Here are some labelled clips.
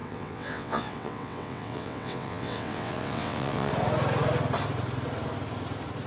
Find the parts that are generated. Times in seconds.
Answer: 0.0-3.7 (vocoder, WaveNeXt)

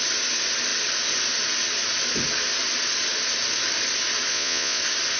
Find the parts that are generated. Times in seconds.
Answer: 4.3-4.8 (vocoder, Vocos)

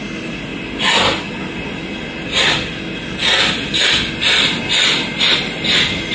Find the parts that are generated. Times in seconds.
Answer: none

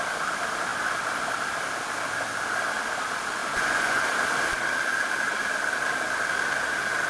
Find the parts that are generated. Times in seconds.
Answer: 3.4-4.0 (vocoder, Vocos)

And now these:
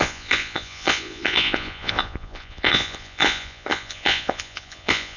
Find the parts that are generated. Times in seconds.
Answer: 0.0-5.2 (vocoder, Vocos)